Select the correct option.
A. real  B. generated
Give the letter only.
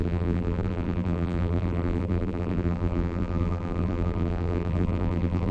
B